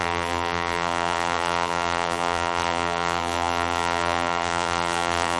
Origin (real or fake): fake